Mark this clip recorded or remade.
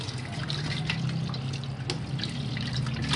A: recorded